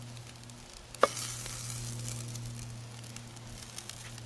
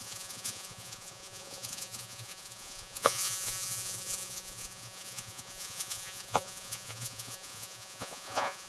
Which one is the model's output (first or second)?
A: second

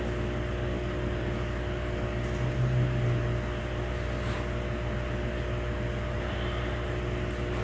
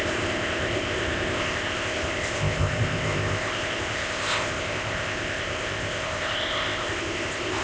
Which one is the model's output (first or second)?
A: second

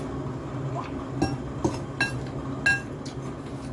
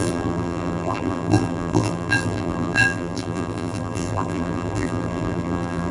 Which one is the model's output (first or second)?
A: second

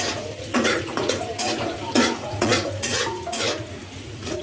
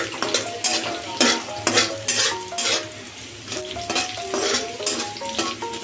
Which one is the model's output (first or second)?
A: first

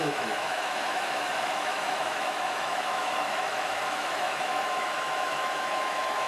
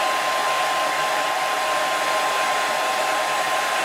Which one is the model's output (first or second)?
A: first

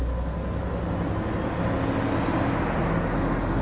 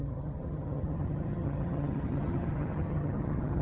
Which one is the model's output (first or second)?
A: second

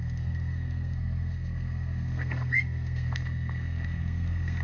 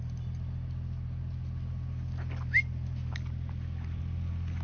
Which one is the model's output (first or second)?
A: first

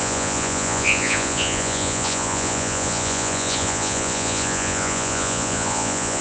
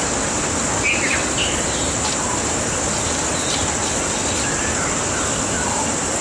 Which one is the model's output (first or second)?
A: first